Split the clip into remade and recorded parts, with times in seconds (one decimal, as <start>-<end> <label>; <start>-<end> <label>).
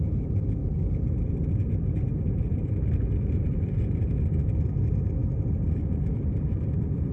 0.0-5.2 remade; 5.2-6.1 recorded; 6.1-7.1 remade